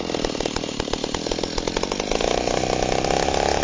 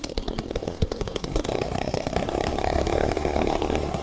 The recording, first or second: first